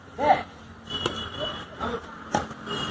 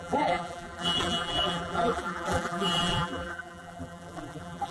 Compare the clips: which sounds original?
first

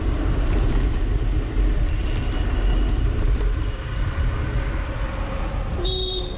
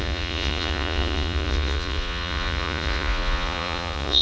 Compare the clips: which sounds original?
first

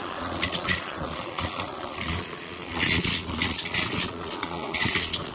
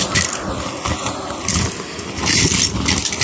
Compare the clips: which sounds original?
second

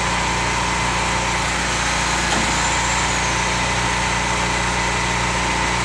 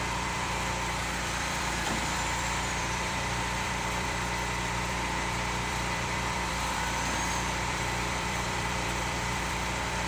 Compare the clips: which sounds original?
first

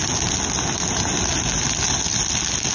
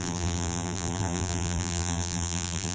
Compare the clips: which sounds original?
first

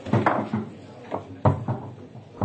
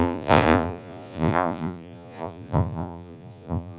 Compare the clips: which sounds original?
first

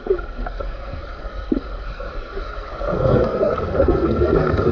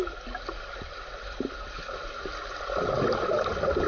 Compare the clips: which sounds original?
second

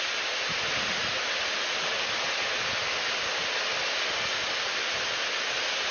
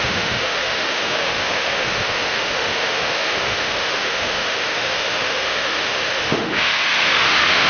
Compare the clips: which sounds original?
first